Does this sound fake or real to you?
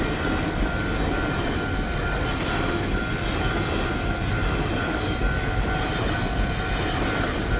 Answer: real